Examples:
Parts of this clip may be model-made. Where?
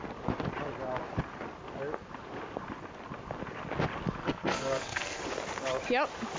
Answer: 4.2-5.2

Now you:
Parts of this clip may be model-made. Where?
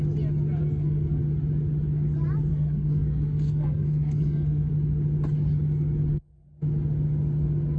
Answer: 0.6-1.2; 2.5-4.7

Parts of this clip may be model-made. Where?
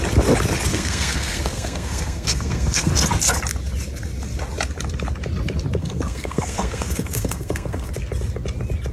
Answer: 0.7-2.9; 5.8-7.9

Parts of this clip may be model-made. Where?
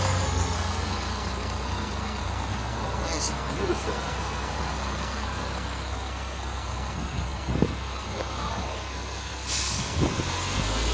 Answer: 0.0-10.9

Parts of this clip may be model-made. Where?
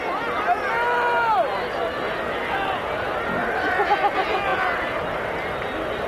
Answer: none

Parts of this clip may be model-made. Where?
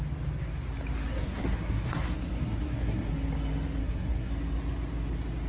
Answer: 1.1-3.1; 3.8-4.3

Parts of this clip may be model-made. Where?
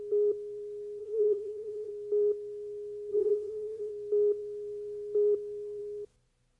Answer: 1.0-1.9; 3.1-3.9